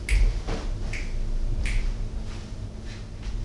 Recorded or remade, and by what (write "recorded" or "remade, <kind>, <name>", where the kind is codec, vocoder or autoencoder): recorded